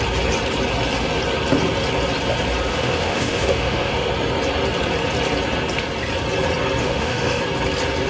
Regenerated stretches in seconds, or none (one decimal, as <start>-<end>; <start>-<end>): 2.7-4.1; 6.8-7.4